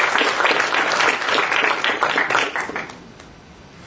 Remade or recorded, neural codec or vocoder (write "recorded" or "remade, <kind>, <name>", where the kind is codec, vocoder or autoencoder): recorded